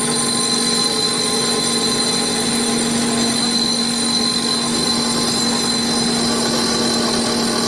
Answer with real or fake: real